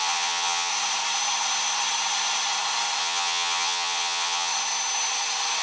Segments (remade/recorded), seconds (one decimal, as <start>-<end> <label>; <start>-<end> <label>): 0.0-0.7 remade; 0.7-3.0 recorded; 3.0-4.5 remade; 4.5-5.6 recorded